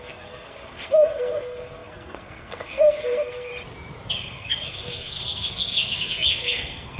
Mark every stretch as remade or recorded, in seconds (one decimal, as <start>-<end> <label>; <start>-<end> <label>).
0.0-3.5 remade; 3.5-4.1 recorded; 4.1-7.0 remade